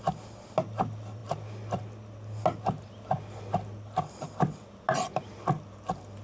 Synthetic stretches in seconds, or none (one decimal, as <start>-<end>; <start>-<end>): none